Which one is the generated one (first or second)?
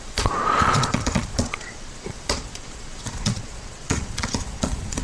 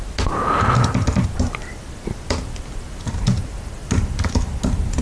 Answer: first